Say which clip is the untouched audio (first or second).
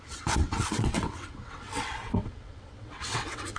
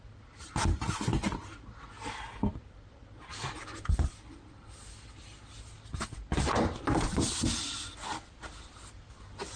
second